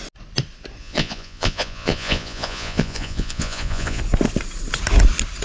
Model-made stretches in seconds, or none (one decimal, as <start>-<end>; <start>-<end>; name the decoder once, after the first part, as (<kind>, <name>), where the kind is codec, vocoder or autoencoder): 0.8-4.0 (vocoder, Vocos)